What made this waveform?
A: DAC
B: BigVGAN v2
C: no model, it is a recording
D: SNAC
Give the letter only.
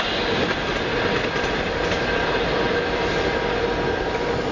C